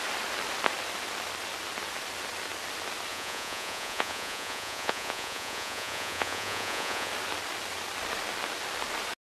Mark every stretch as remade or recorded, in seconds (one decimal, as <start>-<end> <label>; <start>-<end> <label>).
0.0-3.1 recorded; 3.1-7.1 remade; 7.1-9.4 recorded